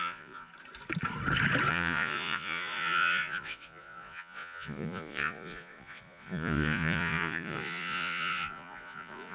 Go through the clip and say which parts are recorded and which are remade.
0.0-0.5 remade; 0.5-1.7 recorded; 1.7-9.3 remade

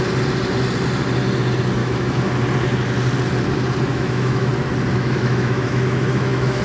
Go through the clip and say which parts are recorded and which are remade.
0.0-1.8 recorded; 1.8-2.3 remade; 2.3-3.9 recorded; 3.9-4.5 remade; 4.5-4.9 recorded; 4.9-6.6 remade

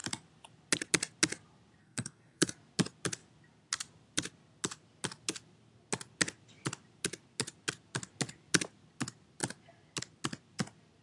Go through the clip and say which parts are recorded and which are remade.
0.0-1.8 recorded; 1.8-2.5 remade; 2.5-11.0 recorded

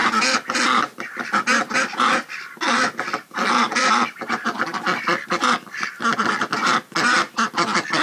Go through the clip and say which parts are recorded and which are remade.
0.0-8.0 recorded

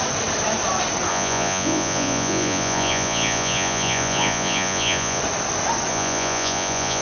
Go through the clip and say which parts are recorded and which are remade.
0.0-1.1 recorded; 1.1-5.2 remade; 5.2-5.9 recorded; 5.9-7.0 remade